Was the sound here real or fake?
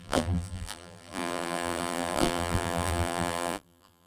fake